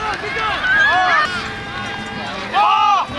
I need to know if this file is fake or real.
real